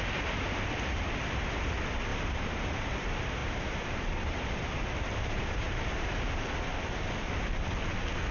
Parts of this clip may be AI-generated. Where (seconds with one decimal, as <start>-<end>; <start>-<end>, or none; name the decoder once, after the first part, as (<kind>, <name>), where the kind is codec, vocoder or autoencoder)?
1.2-1.7 (vocoder, BigVGAN v2); 2.1-2.9; 3.4-6.5

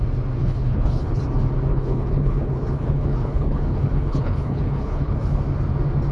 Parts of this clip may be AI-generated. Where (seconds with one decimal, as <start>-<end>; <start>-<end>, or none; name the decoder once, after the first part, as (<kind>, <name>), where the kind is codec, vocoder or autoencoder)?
0.4-1.2 (codec, HILCodec); 1.7-5.4

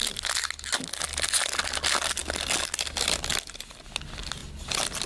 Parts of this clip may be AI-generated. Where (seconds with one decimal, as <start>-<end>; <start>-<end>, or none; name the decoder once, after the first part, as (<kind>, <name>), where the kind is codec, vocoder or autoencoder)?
none

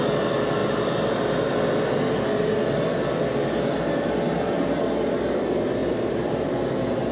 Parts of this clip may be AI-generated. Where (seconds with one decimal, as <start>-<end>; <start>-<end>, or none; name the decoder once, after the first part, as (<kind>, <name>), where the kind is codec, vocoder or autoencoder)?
5.8-6.5 (vocoder, BigVGAN v2)

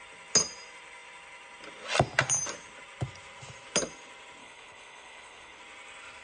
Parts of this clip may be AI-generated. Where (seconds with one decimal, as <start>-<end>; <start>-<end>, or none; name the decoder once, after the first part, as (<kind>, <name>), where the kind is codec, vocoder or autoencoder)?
4.4-5.6 (codec, HILCodec)